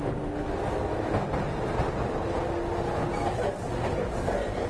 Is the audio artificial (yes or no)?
no